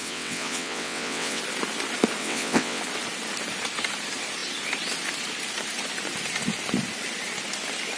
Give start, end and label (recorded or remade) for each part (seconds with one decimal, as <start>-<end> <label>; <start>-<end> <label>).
0.0-1.4 remade; 1.4-2.2 recorded; 2.2-2.8 remade; 2.8-8.0 recorded

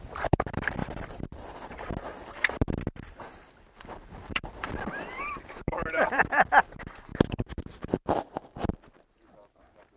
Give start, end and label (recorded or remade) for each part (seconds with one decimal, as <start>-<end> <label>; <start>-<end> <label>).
0.0-7.1 remade; 7.1-8.1 recorded; 8.1-10.0 remade

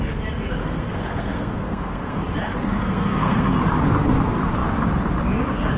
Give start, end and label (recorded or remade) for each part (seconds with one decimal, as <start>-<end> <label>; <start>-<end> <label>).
0.0-0.6 recorded; 0.6-2.2 remade; 2.2-2.7 recorded; 2.7-3.5 remade; 3.5-5.8 recorded

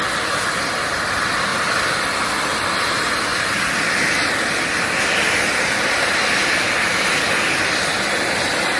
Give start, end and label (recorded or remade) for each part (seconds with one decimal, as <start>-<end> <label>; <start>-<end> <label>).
0.0-8.8 recorded

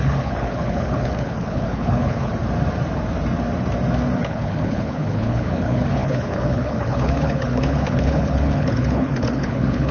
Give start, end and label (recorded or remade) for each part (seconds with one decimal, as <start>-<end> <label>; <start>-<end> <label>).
0.0-2.3 remade; 2.3-4.2 recorded; 4.2-9.9 remade